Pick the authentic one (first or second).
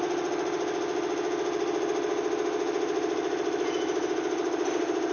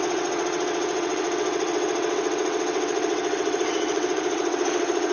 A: first